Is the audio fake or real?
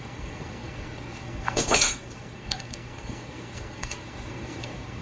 fake